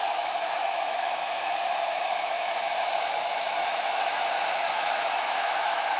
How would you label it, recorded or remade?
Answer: remade